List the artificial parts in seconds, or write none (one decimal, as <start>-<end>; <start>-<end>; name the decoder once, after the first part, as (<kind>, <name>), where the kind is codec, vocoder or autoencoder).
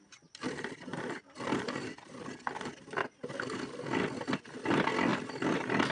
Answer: none